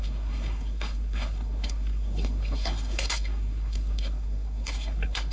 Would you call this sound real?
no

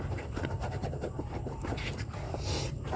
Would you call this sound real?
no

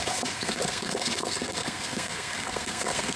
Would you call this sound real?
no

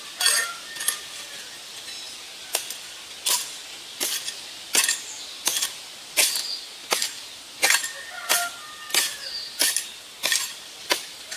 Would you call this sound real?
yes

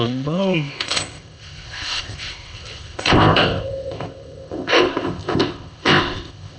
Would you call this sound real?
no